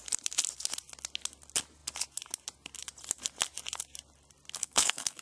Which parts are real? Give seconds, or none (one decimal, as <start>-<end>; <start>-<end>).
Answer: 0.0-4.6